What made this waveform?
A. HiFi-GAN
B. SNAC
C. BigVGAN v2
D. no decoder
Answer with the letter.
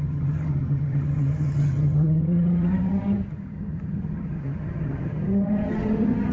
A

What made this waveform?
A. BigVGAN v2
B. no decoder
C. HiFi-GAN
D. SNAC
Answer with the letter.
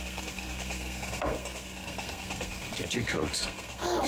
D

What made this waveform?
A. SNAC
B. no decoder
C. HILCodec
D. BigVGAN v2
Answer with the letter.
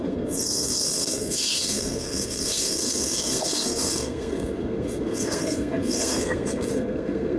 A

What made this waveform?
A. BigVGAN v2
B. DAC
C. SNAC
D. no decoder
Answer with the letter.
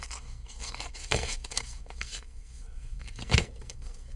C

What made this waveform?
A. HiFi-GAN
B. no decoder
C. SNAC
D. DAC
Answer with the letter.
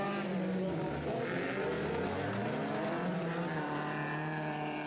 B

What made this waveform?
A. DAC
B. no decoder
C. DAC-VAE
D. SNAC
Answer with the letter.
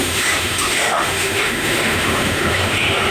C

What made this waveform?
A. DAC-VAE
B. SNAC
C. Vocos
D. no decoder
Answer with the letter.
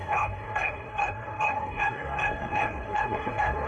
B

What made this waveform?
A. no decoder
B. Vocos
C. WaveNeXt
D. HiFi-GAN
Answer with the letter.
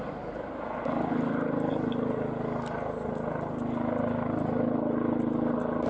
A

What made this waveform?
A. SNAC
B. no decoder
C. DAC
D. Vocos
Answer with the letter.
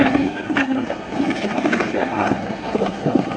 A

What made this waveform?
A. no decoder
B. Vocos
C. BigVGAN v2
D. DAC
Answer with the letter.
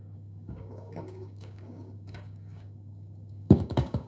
D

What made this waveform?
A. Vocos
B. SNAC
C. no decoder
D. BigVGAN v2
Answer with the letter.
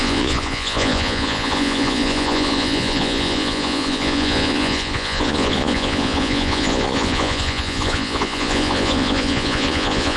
A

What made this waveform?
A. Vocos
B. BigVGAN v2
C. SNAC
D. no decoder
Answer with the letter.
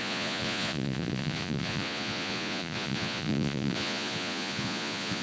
A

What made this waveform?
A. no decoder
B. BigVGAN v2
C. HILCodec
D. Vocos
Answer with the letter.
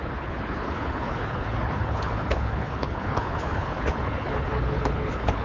C